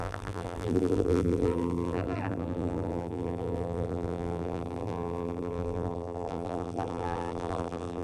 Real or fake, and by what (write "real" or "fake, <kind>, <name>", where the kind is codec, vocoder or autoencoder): fake, vocoder, BigVGAN v2